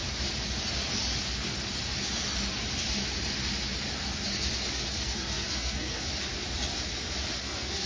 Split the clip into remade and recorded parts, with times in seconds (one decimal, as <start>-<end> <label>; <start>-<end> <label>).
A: 0.0-4.7 recorded; 4.7-6.0 remade; 6.0-7.4 recorded; 7.4-7.9 remade